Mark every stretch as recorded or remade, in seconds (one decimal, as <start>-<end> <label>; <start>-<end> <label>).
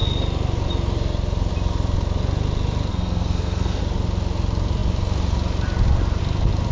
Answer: 0.0-2.9 recorded; 2.9-3.8 remade; 3.8-6.7 recorded